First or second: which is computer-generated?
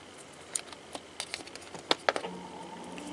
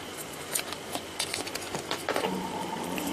second